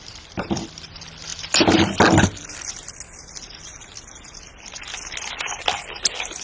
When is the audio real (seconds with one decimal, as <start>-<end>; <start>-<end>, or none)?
0.0-6.4